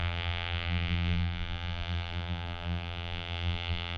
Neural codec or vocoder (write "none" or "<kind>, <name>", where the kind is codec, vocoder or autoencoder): vocoder, BigVGAN v2